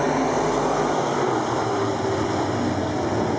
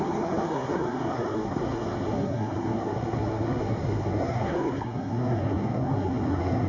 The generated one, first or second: second